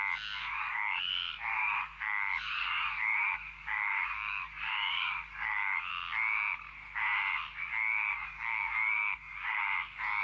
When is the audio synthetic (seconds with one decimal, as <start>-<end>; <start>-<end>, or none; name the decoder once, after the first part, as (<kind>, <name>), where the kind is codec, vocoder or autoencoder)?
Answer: 0.4-1.1 (codec, DAC); 1.5-5.9; 7.7-9.6